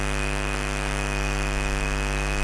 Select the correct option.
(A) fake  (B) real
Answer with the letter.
B